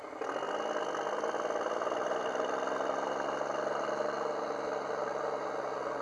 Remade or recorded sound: recorded